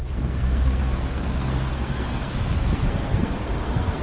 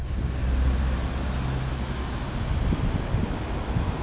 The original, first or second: second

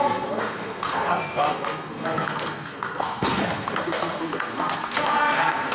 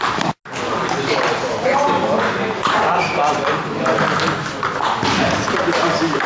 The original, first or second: second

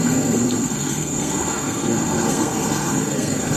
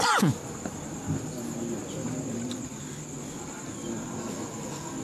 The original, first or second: second